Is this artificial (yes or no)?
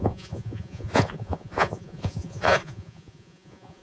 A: yes